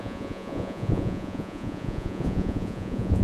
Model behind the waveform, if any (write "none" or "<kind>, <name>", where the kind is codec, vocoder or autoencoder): vocoder, Vocos